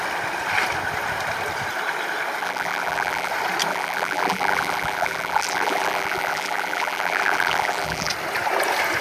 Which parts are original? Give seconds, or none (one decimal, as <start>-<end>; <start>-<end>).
0.0-2.4; 3.3-3.7; 8.1-9.0